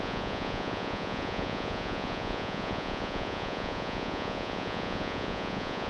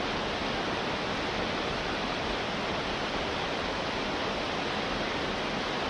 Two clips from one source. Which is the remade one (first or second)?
first